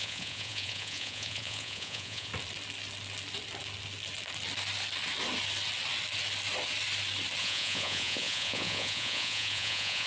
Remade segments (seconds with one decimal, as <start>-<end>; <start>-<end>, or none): 0.0-2.3; 7.4-10.1